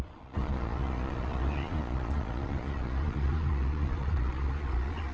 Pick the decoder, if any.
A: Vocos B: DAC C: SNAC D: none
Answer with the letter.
A